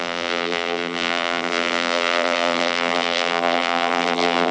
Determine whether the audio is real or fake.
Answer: fake